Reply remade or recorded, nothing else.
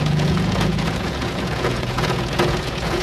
remade